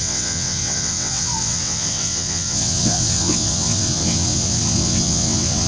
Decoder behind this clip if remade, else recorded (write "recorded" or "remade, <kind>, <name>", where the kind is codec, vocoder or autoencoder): remade, vocoder, WaveNeXt